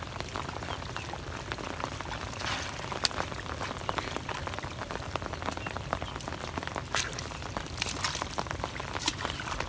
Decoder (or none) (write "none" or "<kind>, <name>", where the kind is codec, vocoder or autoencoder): none